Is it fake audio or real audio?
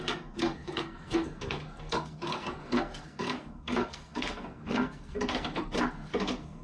fake